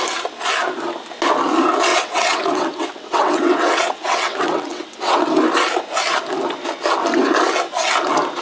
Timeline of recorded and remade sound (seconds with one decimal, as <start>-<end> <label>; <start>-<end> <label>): 0.0-1.9 recorded; 1.9-5.2 remade; 5.2-8.4 recorded

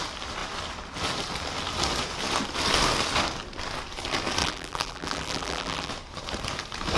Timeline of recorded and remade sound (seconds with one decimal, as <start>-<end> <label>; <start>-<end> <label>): 0.0-4.4 recorded; 4.4-5.9 remade; 5.9-7.0 recorded